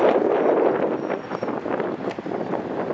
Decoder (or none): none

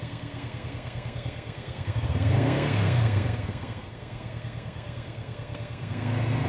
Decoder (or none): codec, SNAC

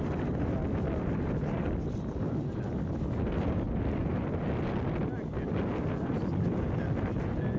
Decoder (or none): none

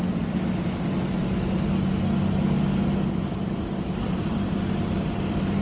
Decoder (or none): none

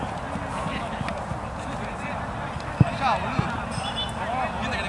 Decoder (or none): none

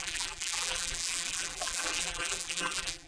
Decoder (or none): vocoder, BigVGAN v2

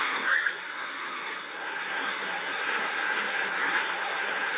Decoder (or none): codec, SNAC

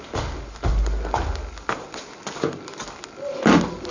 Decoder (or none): none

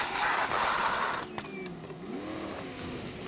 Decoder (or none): none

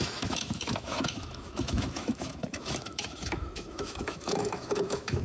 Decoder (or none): autoencoder, DAC-VAE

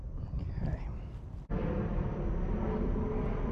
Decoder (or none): none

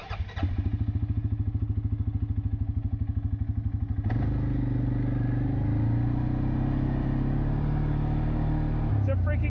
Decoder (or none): none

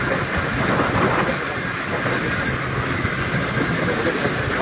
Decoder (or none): none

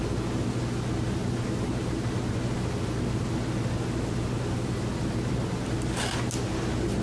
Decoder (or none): none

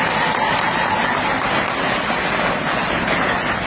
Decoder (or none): none